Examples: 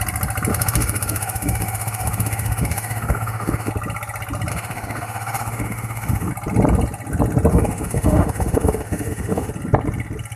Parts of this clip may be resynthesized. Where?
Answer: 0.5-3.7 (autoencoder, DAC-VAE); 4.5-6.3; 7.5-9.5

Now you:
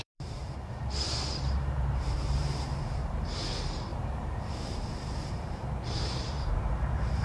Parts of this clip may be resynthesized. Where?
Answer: 0.0-0.4 (vocoder, BigVGAN v2); 1.3-5.6; 6.2-7.2

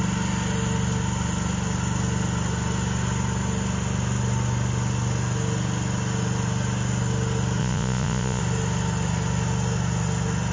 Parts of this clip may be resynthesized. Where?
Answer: 7.6-8.4 (vocoder, Vocos)

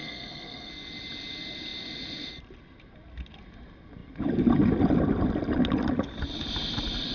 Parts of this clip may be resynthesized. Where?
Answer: 0.0-0.7 (codec, SNAC)

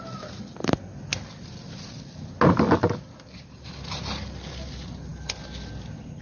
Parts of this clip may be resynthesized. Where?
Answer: none

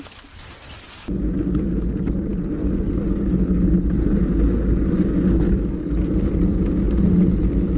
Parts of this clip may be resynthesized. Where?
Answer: none

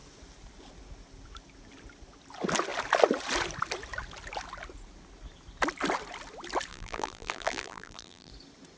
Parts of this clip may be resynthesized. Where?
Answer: 6.7-8.3 (vocoder, BigVGAN v2)

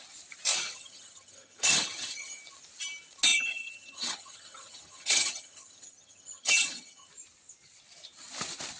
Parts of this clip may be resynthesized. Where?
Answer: 0.5-2.4 (vocoder, HiFi-GAN); 3.3-7.1